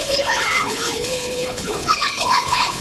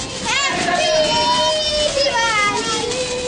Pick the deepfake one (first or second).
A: first